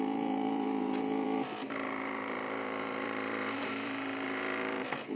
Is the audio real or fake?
fake